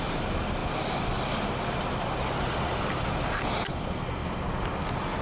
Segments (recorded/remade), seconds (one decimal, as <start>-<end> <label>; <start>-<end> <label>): 0.0-5.2 recorded